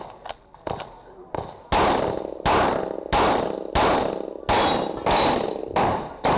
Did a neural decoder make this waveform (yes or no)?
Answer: no